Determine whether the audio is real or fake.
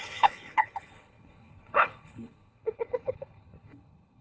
fake